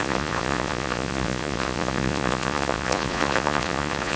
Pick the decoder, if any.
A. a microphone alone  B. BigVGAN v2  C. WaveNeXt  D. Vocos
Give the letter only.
D